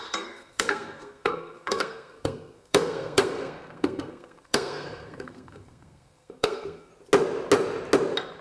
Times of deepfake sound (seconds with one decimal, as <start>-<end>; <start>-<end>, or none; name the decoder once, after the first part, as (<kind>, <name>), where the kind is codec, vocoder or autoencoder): 0.0-6.9 (codec, SNAC)